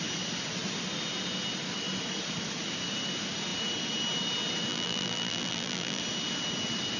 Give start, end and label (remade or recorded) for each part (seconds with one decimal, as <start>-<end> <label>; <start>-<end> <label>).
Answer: 0.0-4.7 recorded; 4.7-6.0 remade; 6.0-7.0 recorded